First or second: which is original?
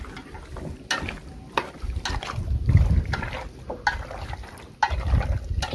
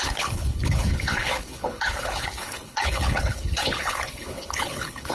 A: first